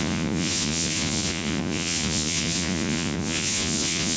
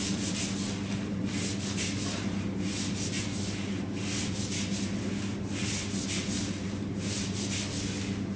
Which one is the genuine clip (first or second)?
second